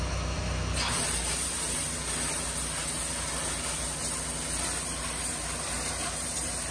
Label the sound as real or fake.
real